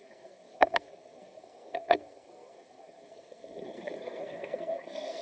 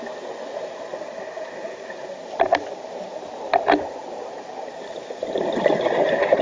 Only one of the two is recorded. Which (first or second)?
second